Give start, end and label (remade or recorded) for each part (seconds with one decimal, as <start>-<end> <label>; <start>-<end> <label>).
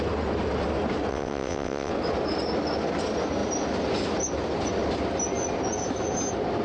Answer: 0.0-1.1 recorded; 1.1-1.9 remade; 1.9-6.6 recorded